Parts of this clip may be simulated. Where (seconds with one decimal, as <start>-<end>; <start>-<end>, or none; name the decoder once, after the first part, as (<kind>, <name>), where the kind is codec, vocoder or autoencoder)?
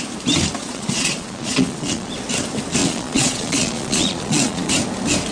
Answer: 0.6-2.1 (vocoder, Vocos); 2.8-4.7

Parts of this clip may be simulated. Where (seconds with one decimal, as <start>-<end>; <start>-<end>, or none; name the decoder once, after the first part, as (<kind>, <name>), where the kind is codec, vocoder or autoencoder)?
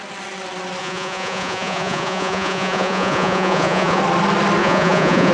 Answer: 0.8-4.0 (vocoder, Vocos); 4.6-5.3